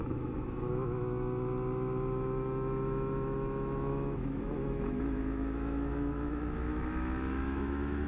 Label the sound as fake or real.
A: fake